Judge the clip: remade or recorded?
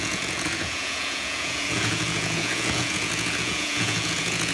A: remade